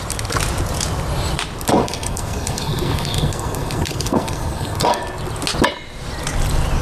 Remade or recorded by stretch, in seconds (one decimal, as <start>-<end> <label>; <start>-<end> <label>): 0.0-1.8 recorded; 1.8-5.0 remade; 5.0-6.8 recorded